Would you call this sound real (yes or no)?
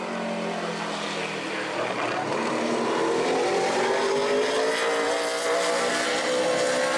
yes